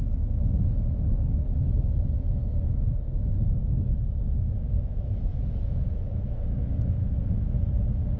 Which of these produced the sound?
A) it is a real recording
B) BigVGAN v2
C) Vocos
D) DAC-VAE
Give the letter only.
D